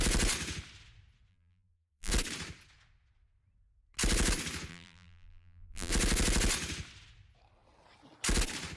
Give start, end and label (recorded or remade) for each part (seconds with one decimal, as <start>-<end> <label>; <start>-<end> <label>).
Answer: 0.0-1.3 recorded; 1.3-2.1 remade; 2.1-4.7 recorded; 4.7-5.9 remade; 5.9-8.8 recorded